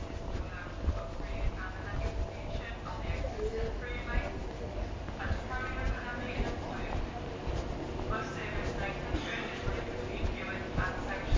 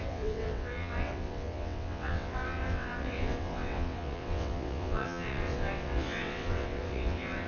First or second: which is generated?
second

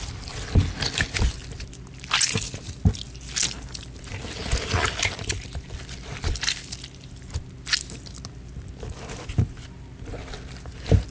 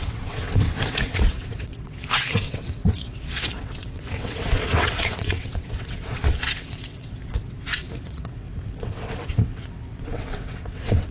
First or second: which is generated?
second